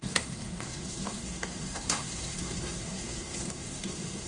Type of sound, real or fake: fake